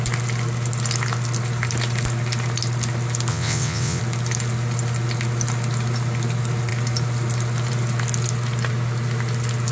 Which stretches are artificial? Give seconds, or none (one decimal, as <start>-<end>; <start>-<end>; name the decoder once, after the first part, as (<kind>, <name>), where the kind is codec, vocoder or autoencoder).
3.3-4.0 (vocoder, WaveNeXt)